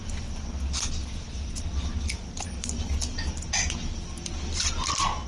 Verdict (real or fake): real